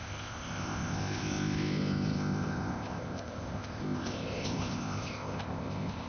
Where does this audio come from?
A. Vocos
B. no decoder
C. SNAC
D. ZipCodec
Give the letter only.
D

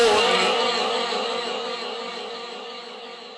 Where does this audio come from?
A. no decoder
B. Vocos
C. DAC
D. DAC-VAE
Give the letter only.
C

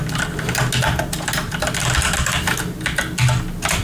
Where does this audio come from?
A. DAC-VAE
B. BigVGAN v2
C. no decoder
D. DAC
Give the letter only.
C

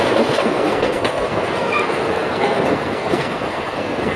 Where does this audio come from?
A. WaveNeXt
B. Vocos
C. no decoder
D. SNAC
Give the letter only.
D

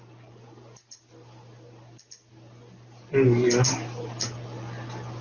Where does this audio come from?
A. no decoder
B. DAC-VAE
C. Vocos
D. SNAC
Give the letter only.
A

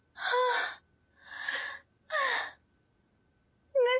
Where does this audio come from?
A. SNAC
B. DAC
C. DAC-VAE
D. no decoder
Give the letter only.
D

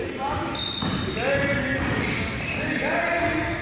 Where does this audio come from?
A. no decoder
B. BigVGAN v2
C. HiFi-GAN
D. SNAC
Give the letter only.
A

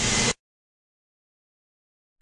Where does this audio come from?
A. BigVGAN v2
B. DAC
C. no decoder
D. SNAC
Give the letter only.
C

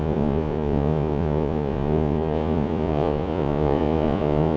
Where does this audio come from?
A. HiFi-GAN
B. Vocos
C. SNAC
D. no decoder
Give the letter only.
B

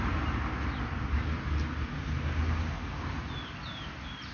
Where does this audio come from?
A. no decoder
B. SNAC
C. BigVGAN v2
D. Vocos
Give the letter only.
A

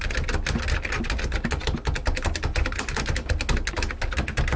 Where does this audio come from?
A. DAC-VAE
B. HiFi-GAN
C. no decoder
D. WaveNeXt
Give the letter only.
C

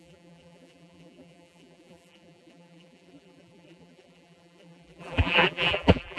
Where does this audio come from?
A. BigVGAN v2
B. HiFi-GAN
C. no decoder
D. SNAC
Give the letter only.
A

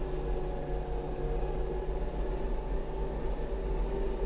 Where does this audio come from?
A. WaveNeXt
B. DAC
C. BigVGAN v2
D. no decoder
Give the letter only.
D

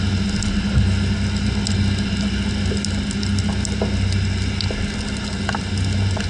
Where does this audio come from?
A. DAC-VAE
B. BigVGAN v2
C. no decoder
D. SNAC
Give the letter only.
C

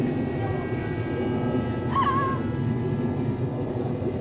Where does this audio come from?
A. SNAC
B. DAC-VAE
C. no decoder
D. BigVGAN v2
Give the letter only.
C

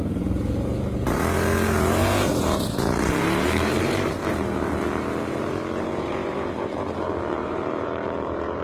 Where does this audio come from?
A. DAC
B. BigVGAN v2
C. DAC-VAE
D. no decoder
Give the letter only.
B